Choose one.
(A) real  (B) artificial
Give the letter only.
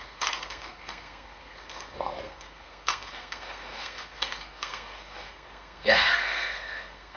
B